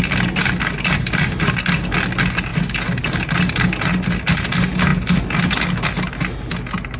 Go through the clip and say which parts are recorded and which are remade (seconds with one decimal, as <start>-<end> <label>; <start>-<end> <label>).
0.0-7.0 recorded